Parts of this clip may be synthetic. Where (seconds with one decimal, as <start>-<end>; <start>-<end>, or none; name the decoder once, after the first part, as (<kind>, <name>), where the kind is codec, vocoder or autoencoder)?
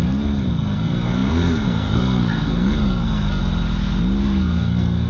0.0-3.4 (codec, SNAC); 4.2-5.1